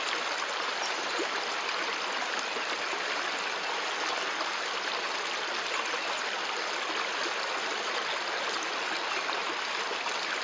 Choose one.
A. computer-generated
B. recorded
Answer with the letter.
B